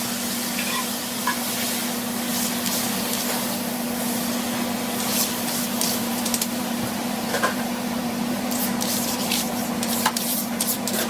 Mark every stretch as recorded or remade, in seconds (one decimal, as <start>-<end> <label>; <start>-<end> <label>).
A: 0.0-6.0 recorded; 6.0-11.1 remade

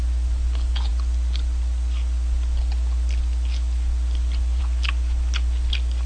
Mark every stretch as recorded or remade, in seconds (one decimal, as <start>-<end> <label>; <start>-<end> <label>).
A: 0.0-6.1 recorded

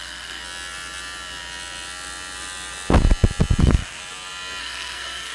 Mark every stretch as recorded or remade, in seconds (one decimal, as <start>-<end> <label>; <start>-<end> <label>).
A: 0.0-0.4 remade; 0.4-3.6 recorded; 3.6-4.0 remade; 4.0-4.6 recorded; 4.6-5.3 remade

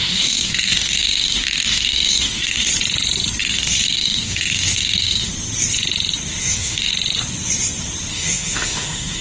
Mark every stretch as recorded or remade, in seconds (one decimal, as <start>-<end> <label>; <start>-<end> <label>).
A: 0.0-2.7 remade; 2.7-3.4 recorded; 3.4-5.3 remade; 5.3-6.4 recorded; 6.4-6.9 remade; 6.9-8.1 recorded; 8.1-9.2 remade

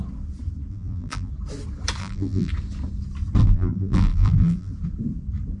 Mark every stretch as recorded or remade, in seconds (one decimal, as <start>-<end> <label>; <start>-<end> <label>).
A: 0.0-0.7 recorded; 0.7-1.3 remade; 1.3-2.0 recorded; 2.0-2.5 remade; 2.5-3.4 recorded; 3.4-4.7 remade; 4.7-5.6 recorded

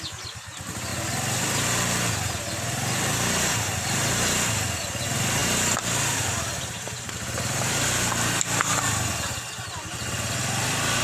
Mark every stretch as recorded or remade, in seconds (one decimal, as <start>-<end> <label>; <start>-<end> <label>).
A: 0.0-11.0 recorded